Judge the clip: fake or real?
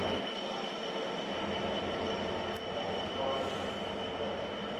real